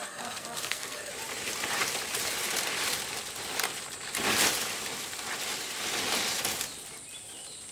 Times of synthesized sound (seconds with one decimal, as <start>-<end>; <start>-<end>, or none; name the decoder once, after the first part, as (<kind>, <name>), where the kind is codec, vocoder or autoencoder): 0.0-1.1 (codec, SNAC)